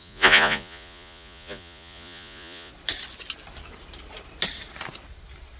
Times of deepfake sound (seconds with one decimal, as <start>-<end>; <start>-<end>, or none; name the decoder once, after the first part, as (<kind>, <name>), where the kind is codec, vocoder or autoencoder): 0.0-2.7 (vocoder, Vocos)